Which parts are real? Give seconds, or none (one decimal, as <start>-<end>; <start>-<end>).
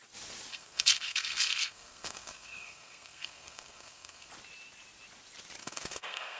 0.0-0.5; 4.3-5.6